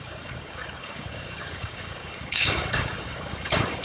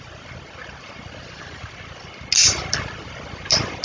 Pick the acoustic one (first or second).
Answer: second